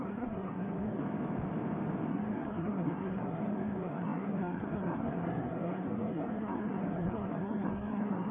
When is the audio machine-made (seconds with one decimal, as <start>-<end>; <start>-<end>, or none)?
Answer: 0.0-1.0; 2.1-8.3